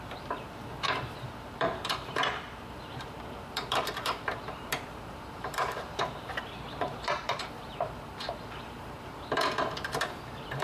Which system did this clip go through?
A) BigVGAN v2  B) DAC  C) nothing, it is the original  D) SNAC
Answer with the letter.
A